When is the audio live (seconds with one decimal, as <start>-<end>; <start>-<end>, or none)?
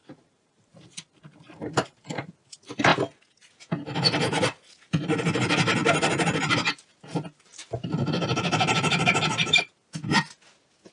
2.3-5.8; 9.6-10.9